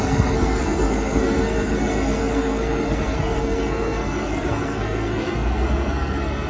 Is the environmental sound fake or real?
fake